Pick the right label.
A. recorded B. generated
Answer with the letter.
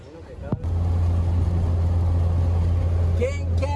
A